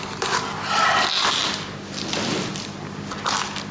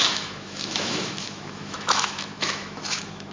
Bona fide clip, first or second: first